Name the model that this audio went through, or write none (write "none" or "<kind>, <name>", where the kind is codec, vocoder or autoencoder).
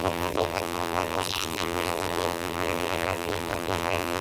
vocoder, BigVGAN v2